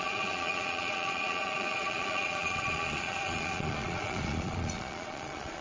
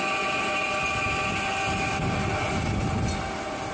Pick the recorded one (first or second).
second